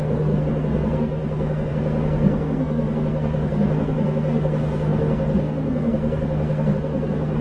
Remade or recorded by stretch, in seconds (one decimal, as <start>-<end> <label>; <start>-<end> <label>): 0.0-7.4 remade